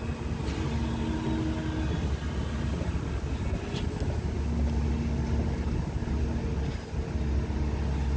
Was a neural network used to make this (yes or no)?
no